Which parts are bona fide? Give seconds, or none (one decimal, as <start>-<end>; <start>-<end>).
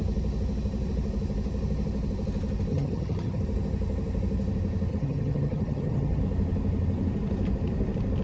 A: 0.0-2.7; 3.4-4.9; 6.2-8.2